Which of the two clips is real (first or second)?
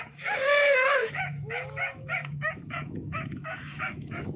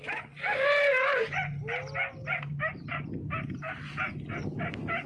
second